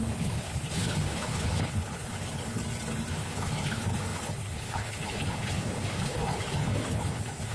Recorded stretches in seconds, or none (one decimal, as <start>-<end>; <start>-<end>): 2.6-3.1